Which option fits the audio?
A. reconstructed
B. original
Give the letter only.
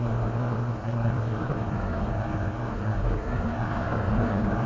A